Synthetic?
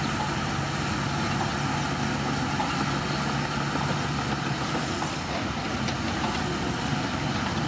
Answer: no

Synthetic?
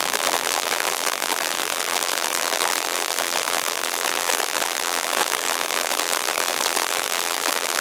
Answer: yes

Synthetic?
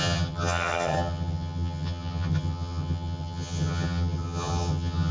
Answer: yes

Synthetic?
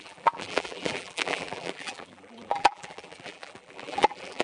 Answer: yes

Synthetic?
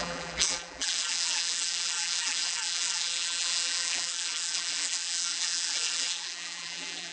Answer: yes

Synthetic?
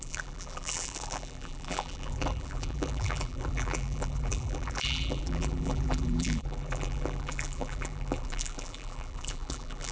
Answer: yes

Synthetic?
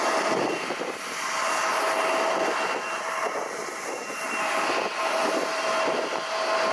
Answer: no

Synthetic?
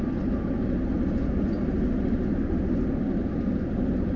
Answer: no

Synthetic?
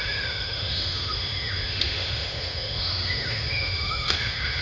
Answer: yes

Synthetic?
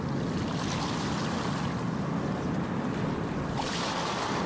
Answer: no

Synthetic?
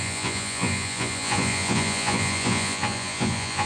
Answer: yes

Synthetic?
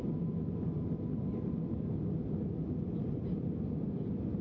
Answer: no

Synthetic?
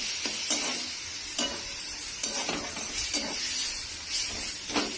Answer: no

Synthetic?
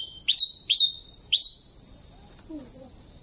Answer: no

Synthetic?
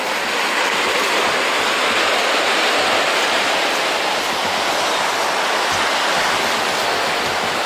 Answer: no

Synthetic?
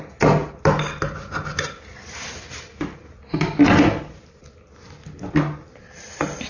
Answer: no